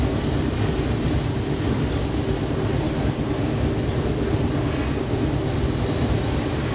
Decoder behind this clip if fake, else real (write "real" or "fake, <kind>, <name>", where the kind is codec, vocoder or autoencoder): real